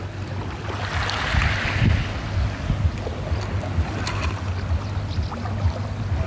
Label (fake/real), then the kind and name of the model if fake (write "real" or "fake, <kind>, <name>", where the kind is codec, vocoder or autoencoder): real